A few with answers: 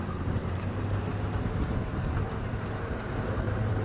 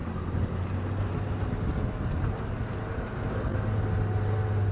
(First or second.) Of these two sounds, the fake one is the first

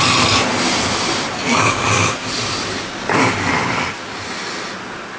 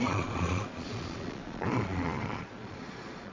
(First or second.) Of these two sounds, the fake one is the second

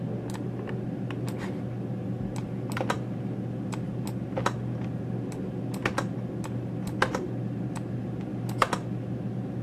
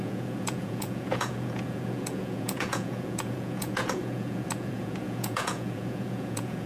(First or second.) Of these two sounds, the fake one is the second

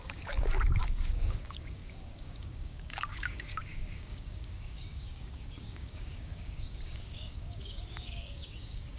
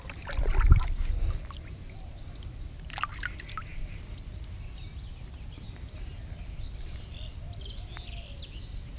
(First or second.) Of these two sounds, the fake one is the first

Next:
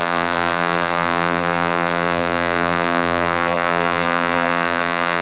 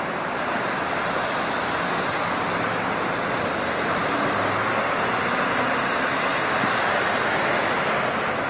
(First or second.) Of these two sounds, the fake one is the first